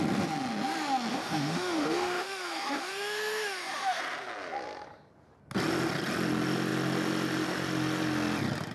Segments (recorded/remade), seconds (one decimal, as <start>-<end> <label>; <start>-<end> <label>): 0.0-1.1 recorded; 1.1-4.0 remade; 4.0-8.7 recorded